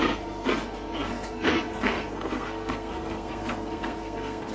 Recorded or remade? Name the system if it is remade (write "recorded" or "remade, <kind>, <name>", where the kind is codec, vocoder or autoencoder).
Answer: remade, codec, SNAC